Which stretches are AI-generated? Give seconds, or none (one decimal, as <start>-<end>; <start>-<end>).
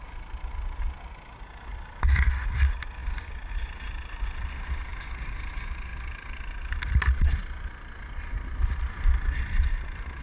none